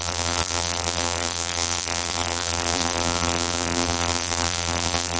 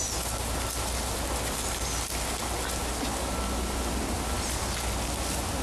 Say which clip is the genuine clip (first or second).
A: second